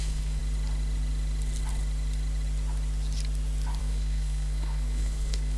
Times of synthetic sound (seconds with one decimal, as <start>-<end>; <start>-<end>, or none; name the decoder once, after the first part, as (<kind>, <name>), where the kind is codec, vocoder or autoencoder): 0.0-0.4 (codec, SNAC); 3.8-5.6